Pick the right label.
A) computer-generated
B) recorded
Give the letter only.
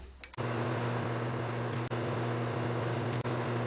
B